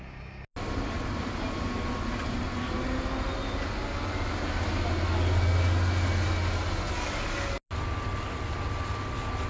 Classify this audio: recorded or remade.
recorded